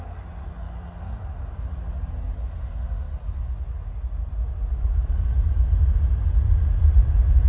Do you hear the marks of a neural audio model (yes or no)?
no